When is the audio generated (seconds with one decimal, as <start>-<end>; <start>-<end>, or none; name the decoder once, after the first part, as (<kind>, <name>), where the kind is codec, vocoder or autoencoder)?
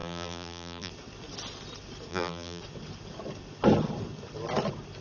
0.0-0.9 (vocoder, BigVGAN v2); 2.1-2.6